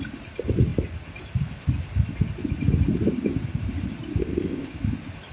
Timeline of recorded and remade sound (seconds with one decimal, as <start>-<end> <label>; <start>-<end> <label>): 0.0-4.2 recorded; 4.2-4.7 remade; 4.7-5.3 recorded